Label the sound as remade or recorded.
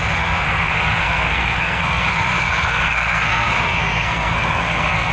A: remade